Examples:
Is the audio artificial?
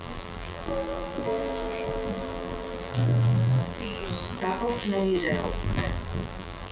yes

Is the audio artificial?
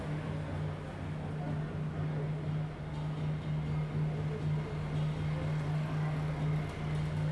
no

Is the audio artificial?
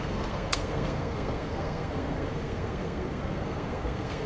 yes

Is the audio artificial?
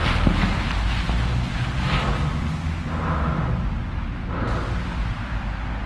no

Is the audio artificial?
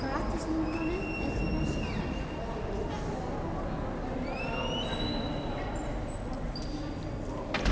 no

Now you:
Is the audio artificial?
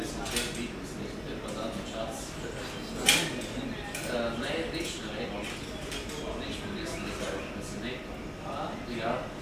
no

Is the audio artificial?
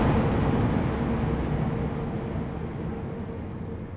no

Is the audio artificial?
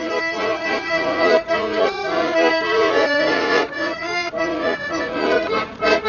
yes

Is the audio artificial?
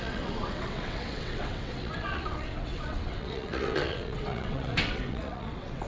yes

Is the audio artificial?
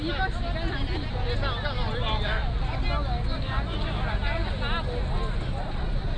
no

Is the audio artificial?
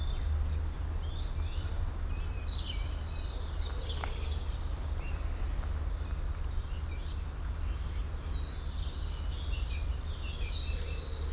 no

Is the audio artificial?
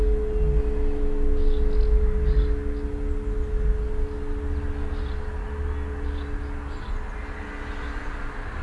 no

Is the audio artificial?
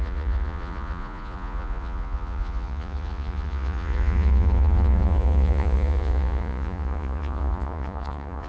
yes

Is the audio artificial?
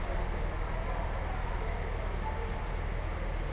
no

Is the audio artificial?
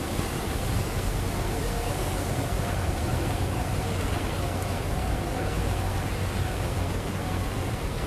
yes